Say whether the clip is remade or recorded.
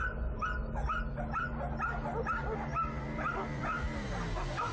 recorded